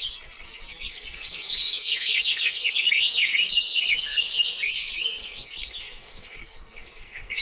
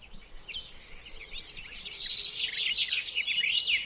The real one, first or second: second